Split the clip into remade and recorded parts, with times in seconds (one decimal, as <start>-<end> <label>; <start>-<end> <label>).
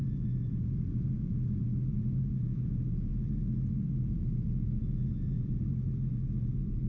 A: 0.0-3.1 remade; 3.1-4.0 recorded; 4.0-6.9 remade